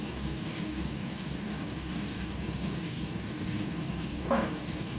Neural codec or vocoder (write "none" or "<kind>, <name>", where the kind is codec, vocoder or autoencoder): codec, DAC